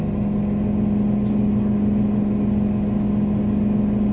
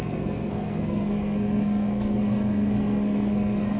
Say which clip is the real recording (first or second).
first